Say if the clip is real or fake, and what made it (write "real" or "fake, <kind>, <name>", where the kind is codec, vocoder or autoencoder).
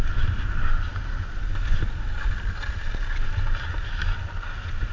real